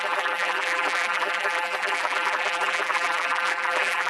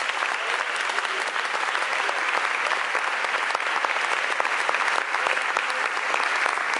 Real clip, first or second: second